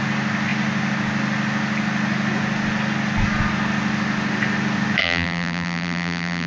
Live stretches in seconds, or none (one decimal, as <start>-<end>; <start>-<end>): 0.0-5.0